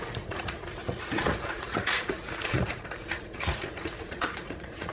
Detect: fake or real fake